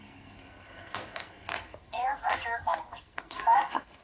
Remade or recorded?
remade